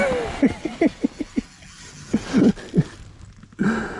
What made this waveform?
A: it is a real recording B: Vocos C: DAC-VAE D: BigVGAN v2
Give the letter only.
A